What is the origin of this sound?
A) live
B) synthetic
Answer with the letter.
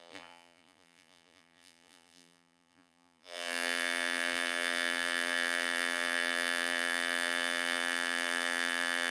B